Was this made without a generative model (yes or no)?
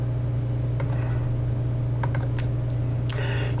yes